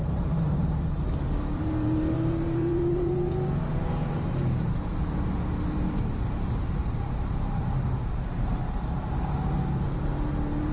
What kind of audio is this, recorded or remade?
remade